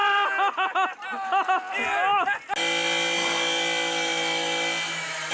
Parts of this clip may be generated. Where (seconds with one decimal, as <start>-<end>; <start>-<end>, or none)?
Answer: none